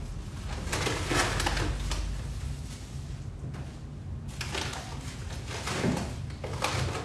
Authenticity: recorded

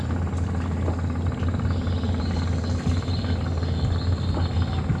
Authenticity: recorded